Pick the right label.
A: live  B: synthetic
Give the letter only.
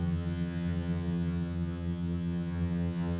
B